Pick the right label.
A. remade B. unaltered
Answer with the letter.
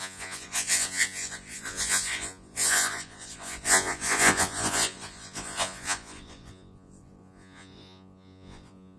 A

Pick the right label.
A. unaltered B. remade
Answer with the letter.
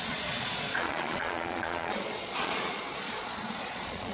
B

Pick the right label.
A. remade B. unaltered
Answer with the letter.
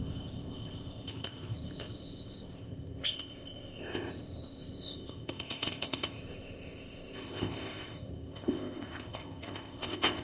A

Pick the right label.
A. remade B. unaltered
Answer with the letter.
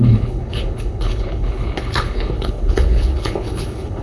A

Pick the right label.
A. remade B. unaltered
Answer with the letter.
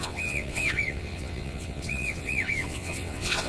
A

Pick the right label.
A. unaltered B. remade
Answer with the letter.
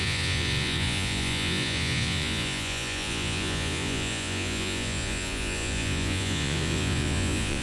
B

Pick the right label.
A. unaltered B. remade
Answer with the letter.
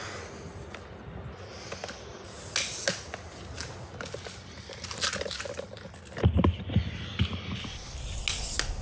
A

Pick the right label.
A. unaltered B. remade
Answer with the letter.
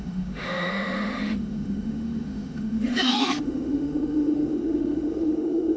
B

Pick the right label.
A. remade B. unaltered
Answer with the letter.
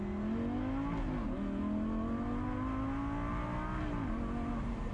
B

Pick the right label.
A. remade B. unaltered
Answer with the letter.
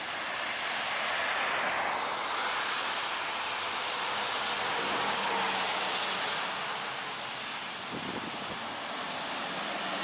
B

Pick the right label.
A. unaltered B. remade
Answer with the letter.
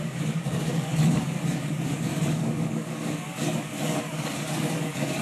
B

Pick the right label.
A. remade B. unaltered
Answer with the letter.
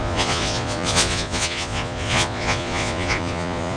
A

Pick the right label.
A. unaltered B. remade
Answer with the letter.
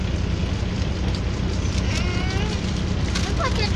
A